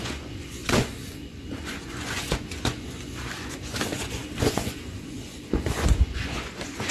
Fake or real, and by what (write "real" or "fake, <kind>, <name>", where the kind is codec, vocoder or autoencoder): fake, vocoder, Vocos